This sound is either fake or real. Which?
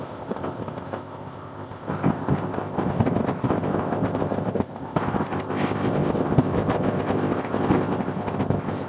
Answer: fake